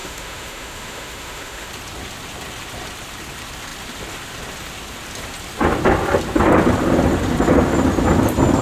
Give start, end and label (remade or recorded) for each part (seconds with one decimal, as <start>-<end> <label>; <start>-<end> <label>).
0.0-1.7 remade; 1.7-8.6 recorded